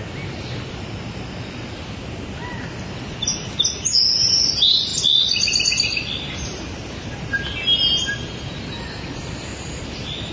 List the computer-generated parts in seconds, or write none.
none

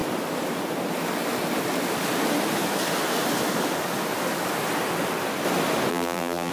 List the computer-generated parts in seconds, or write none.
5.9-6.5

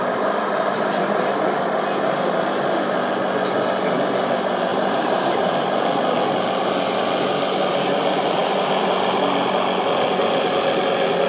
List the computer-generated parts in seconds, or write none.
4.7-5.5

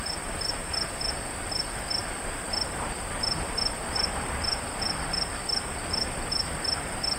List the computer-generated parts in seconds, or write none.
2.0-6.3

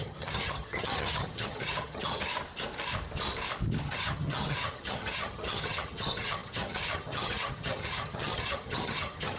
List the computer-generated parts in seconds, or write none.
0.0-2.3; 3.8-9.4